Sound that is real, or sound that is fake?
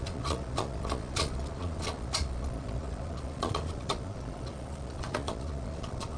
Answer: fake